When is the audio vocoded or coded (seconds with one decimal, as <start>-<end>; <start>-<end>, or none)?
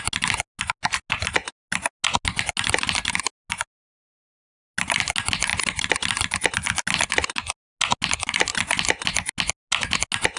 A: none